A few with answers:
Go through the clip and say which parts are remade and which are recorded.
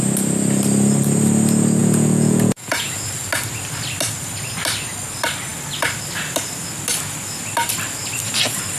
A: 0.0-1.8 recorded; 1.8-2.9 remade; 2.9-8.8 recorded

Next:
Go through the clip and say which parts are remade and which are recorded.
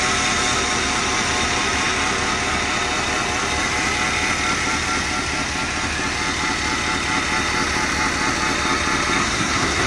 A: 0.0-9.2 recorded; 9.2-9.9 remade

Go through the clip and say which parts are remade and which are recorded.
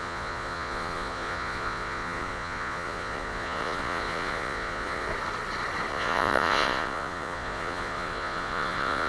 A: 0.0-5.1 remade; 5.1-5.9 recorded; 5.9-9.1 remade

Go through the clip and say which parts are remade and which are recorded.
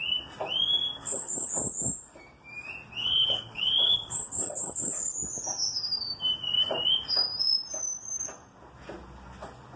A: 0.0-1.0 recorded; 1.0-1.5 remade; 1.5-3.0 recorded; 3.0-5.1 remade; 5.1-9.8 recorded